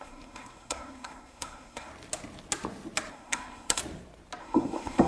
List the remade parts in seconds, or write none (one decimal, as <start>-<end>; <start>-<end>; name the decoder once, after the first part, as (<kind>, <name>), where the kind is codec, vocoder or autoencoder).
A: 0.0-1.9 (codec, SNAC); 3.1-3.8; 4.4-5.1